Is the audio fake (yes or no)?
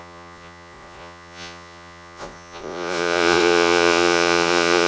yes